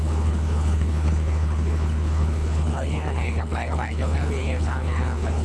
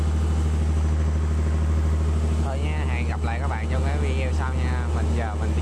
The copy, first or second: first